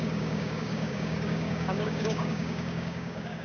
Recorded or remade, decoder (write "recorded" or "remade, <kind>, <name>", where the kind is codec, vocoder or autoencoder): remade, codec, DAC